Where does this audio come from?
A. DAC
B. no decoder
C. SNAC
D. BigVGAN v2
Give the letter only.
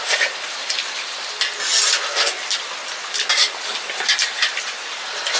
B